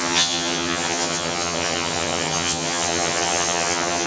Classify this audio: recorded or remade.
remade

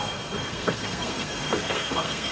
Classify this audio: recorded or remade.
remade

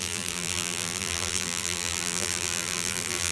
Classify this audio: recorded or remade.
remade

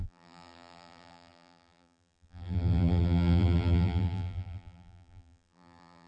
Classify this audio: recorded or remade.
remade